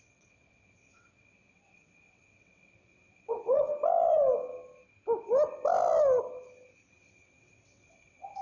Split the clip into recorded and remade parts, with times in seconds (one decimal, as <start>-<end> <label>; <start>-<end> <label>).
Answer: 0.0-3.7 remade; 3.7-6.9 recorded; 6.9-8.4 remade